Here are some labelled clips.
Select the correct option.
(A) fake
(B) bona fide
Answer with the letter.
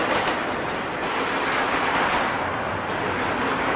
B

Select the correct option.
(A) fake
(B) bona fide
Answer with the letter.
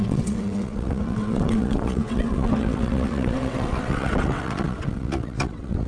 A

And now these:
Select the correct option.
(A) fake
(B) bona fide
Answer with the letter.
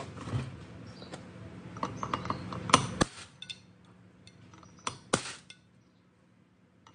B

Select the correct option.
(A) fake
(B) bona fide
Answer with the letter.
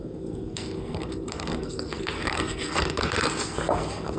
A